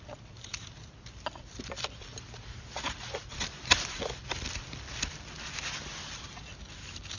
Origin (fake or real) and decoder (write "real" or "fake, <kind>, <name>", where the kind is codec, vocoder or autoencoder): real